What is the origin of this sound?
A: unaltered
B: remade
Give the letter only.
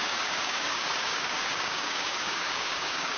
B